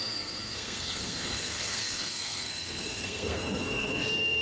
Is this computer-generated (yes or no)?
yes